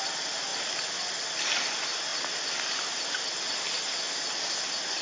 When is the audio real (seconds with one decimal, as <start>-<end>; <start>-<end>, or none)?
0.0-5.0